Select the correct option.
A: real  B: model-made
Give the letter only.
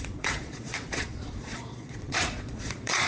B